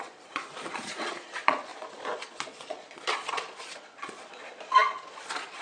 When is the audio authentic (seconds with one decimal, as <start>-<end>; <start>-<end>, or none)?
none